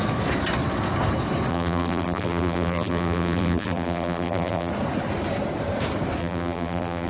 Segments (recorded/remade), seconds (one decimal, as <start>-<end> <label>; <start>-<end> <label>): 0.0-1.5 recorded; 1.5-4.7 remade; 4.7-6.2 recorded; 6.2-7.1 remade